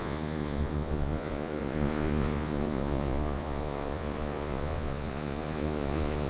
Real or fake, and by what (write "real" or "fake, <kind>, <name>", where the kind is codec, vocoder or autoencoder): fake, vocoder, Vocos